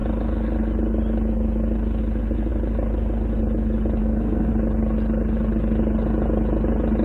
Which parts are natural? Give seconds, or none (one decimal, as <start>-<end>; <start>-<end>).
0.0-4.0; 4.5-7.0